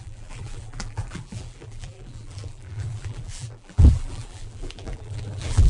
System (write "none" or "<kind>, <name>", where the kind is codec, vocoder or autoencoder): vocoder, BigVGAN v2